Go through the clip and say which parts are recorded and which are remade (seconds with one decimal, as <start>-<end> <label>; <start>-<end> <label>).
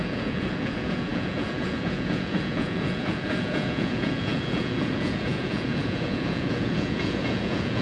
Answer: 0.0-7.8 remade